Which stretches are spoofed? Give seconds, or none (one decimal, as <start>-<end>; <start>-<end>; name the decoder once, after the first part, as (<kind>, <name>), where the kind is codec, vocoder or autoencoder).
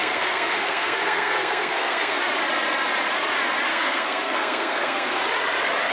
0.0-2.2 (codec, SNAC); 3.7-5.2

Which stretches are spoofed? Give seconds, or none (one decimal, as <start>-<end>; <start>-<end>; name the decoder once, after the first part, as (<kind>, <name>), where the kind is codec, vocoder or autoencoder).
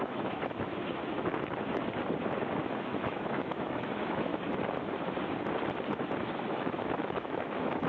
0.0-0.7 (autoencoder, DAC-VAE); 2.7-4.3; 6.5-7.9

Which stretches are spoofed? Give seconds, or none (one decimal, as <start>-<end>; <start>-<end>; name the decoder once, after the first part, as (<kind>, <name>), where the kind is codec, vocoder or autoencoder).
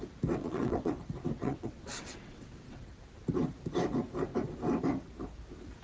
0.4-0.9 (vocoder, WaveNeXt); 1.4-3.0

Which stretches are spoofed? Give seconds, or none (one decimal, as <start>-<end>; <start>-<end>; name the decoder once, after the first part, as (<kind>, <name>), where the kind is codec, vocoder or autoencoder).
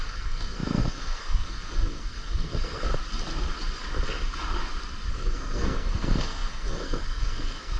0.0-2.9 (codec, SNAC); 5.1-7.8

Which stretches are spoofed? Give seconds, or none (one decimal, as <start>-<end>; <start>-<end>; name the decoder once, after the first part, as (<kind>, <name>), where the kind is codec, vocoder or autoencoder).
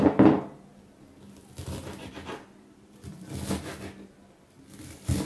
0.7-2.1 (vocoder, BigVGAN v2)